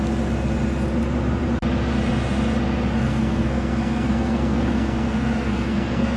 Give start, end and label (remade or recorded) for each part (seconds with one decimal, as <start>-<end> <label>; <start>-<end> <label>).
0.0-3.0 recorded; 3.0-6.2 remade